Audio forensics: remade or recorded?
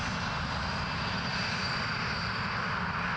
recorded